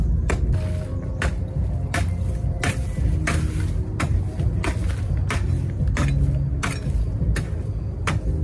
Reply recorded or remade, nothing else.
recorded